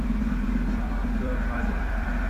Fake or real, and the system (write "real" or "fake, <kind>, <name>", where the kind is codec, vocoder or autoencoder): fake, vocoder, BigVGAN v2